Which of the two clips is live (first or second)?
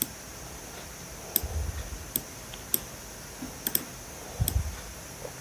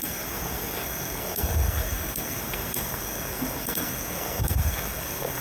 first